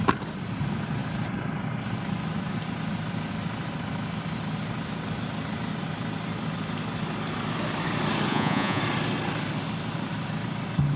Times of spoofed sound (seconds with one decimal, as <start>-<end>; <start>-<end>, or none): 8.3-8.8